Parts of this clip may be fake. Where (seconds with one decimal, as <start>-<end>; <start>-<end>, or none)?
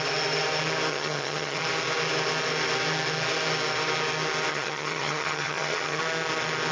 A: 0.9-1.6; 4.5-6.0